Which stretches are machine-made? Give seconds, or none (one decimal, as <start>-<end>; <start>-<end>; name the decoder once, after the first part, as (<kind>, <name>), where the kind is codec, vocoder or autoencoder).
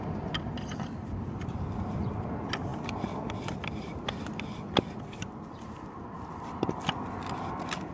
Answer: none